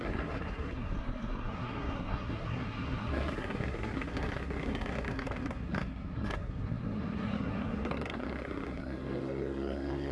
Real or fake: fake